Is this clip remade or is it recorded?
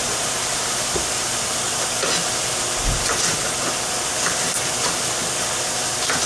recorded